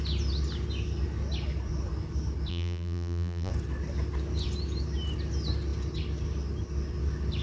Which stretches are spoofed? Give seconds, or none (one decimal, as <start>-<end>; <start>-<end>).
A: 2.5-3.5